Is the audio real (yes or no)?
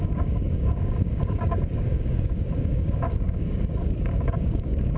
no